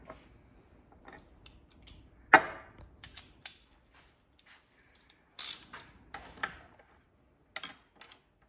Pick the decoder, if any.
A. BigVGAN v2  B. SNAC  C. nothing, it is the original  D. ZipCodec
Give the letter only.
C